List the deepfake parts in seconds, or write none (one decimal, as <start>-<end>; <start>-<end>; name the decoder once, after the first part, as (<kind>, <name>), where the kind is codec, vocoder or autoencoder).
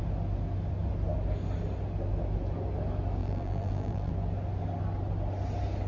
3.2-4.1 (vocoder, BigVGAN v2)